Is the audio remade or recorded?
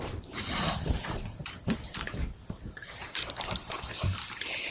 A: remade